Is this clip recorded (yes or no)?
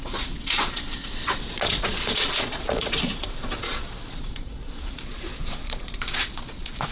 no